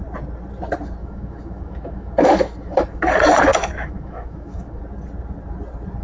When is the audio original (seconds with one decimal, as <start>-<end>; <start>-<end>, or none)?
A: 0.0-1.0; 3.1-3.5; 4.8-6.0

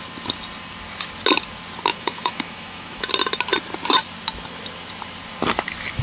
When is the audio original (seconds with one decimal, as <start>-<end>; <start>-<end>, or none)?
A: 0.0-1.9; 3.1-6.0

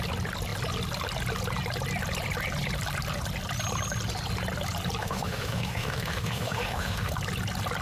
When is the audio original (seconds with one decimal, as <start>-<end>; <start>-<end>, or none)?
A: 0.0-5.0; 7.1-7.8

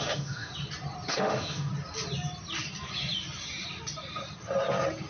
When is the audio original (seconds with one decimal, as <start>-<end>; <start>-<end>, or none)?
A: 0.5-1.1; 1.7-5.1

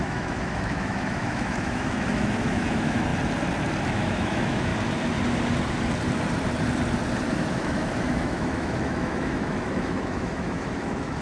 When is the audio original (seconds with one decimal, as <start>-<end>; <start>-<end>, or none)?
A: 3.1-3.9; 4.7-7.5

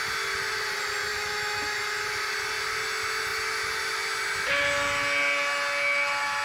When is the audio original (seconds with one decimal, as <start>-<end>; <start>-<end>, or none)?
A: 0.0-1.1; 2.1-6.4